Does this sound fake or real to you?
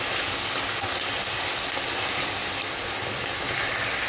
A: real